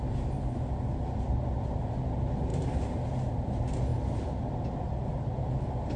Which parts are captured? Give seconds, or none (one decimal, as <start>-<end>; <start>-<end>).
0.0-6.0

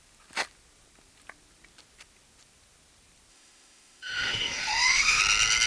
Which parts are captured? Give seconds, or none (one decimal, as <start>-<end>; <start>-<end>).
0.0-3.3; 5.2-5.7

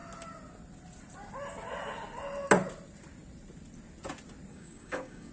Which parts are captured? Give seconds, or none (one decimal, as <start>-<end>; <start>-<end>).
0.0-4.5